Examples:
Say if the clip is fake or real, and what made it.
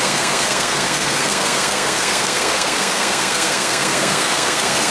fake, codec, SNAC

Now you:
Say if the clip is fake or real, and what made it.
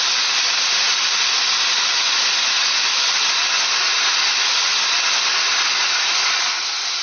real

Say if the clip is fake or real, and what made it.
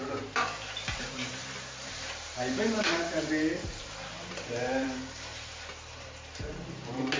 fake, vocoder, BigVGAN v2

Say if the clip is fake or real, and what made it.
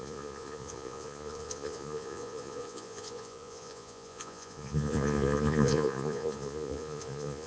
fake, vocoder, Vocos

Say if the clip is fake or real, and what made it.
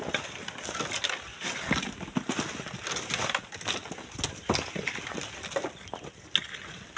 real